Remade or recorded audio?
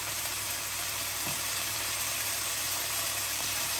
remade